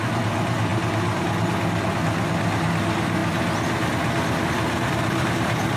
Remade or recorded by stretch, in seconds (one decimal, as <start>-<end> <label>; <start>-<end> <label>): 0.0-5.8 recorded